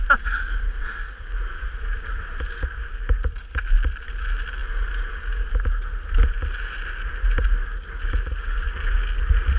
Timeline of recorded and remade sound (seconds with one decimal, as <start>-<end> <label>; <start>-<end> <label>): 0.0-1.0 recorded; 1.0-3.4 remade; 3.4-9.6 recorded